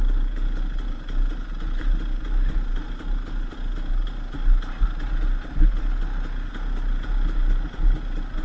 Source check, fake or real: real